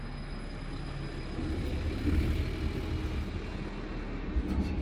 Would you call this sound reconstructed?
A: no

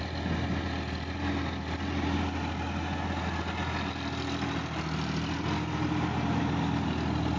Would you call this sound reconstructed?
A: no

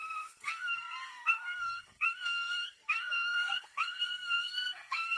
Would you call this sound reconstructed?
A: yes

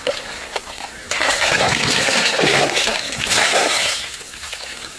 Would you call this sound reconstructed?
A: yes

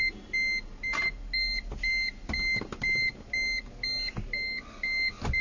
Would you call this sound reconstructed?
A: no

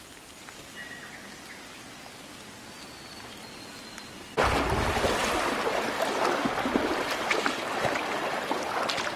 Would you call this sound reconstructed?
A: no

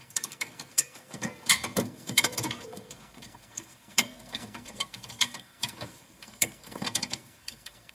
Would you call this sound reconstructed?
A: yes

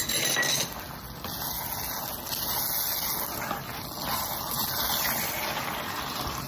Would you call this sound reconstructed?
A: no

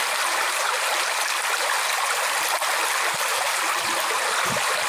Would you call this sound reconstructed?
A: no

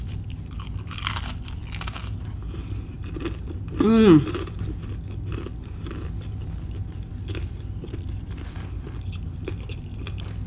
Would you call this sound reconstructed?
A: no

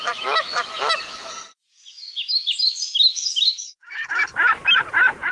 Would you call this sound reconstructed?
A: yes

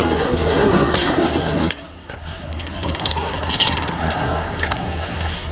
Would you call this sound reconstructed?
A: yes